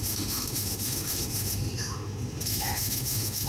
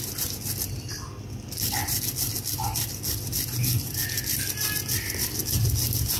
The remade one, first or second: first